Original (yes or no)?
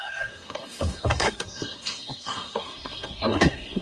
no